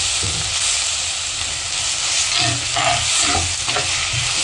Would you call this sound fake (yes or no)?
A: no